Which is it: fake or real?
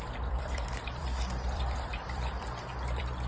fake